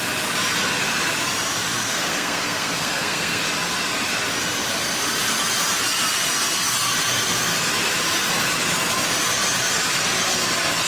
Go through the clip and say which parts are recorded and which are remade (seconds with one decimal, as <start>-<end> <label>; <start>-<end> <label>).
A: 0.0-1.8 recorded; 1.8-3.4 remade; 3.4-10.9 recorded